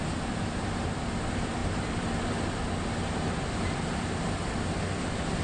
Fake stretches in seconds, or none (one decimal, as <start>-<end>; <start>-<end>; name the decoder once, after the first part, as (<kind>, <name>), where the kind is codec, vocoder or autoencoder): none